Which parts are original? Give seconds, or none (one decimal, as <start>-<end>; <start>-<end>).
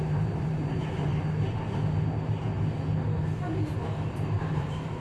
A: 1.1-4.1